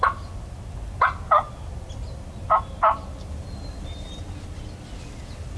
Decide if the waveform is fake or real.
real